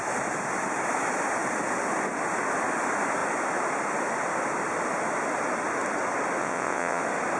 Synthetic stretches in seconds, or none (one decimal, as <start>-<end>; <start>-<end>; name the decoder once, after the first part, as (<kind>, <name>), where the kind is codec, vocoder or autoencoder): 6.4-7.0 (vocoder, WaveNeXt)